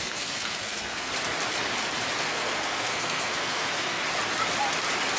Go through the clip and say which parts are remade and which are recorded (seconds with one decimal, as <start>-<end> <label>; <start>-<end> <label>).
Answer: 0.0-1.1 remade; 1.1-2.2 recorded; 2.2-4.0 remade; 4.0-5.2 recorded